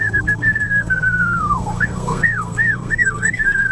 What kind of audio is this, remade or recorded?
remade